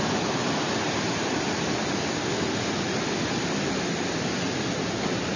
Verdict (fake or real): real